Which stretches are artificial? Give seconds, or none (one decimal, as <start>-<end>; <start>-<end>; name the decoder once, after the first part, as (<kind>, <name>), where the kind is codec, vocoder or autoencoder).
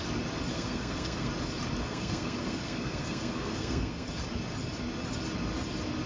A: 0.5-1.3 (codec, SNAC); 1.8-4.1